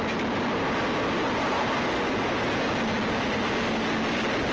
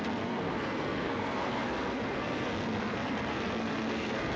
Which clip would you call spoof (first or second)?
second